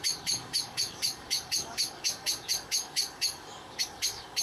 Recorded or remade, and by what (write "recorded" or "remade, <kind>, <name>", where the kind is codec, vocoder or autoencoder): remade, codec, DAC